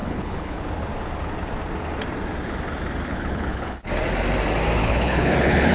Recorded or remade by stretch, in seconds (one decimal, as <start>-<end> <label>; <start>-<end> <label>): 0.0-0.6 remade; 0.6-3.1 recorded; 3.1-3.9 remade; 3.9-4.8 recorded; 4.8-5.7 remade